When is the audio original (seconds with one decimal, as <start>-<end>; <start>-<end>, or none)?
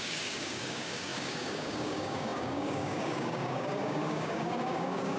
none